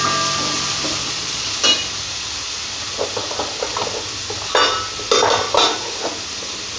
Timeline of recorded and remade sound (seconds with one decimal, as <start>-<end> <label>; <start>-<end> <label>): 0.0-1.0 recorded; 1.0-1.5 remade; 1.5-6.8 recorded